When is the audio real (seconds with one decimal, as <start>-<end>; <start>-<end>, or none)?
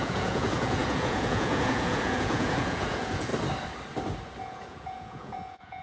3.3-4.4